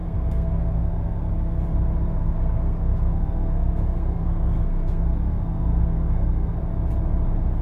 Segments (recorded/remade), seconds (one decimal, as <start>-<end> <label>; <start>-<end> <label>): 0.0-1.6 remade; 1.6-2.2 recorded; 2.2-6.6 remade; 6.6-7.6 recorded